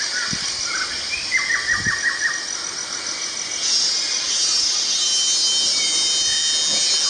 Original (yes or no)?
yes